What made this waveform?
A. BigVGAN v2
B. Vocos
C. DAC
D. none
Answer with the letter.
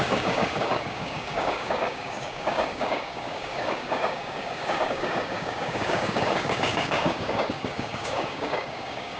C